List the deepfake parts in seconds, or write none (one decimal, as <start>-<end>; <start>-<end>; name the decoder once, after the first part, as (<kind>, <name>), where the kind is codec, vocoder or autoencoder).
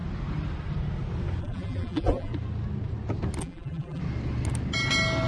1.4-2.3 (vocoder, BigVGAN v2); 3.4-4.0